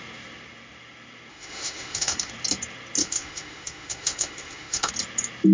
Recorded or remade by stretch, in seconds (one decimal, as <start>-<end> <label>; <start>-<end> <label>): 0.0-1.3 recorded; 1.3-2.3 remade; 2.3-3.0 recorded; 3.0-4.9 remade; 4.9-5.5 recorded